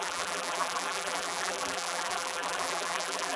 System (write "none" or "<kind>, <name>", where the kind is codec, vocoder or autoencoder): vocoder, BigVGAN v2